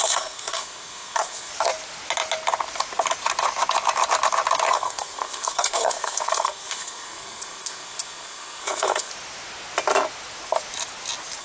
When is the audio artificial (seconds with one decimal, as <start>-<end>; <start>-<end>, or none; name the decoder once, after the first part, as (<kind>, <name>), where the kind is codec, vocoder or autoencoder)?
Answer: 0.0-1.5 (codec, SNAC); 4.7-9.1